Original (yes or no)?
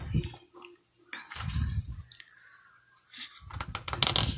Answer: yes